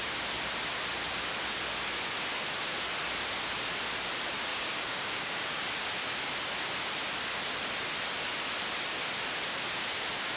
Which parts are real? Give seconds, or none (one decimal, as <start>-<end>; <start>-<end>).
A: 0.0-4.5; 5.6-10.4